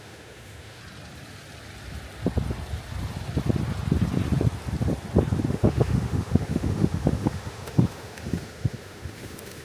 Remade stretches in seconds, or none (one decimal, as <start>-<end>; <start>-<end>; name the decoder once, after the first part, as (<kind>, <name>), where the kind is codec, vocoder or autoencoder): 0.0-0.8 (autoencoder, DAC-VAE); 5.5-9.6